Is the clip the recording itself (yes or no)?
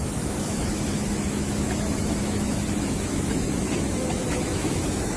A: no